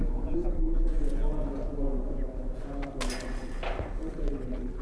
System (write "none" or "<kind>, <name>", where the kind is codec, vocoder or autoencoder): none